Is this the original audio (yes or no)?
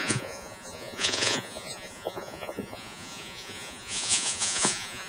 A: no